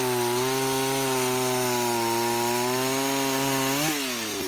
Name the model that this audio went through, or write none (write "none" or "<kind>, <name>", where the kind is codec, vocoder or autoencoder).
none